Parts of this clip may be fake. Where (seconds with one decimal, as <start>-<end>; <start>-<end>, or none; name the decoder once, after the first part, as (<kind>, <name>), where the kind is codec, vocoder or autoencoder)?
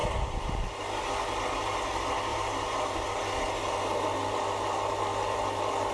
0.0-1.1 (vocoder, BigVGAN v2); 2.3-3.2